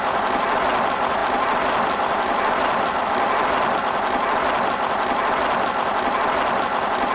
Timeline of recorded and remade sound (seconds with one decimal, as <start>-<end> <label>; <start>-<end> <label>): 0.0-7.1 recorded